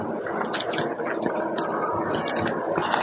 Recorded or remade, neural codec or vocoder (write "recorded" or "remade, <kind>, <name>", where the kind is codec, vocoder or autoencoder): recorded